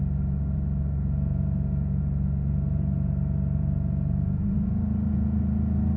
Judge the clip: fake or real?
fake